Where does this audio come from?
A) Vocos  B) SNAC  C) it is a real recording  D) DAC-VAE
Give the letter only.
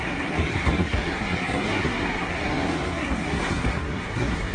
B